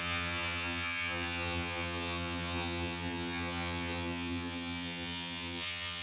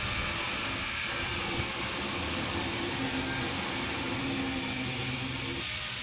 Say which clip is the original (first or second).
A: second